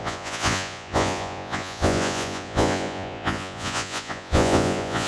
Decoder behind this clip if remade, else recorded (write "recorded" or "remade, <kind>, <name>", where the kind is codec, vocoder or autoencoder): remade, vocoder, Vocos